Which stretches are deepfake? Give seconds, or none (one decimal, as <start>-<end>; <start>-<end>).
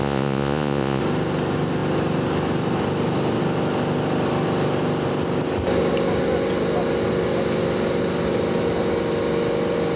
0.0-1.0